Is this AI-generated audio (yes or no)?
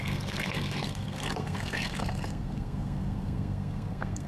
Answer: yes